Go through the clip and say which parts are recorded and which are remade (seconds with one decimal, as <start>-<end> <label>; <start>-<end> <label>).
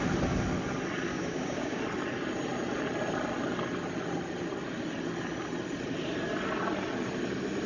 0.0-1.1 recorded; 1.1-1.8 remade; 1.8-7.7 recorded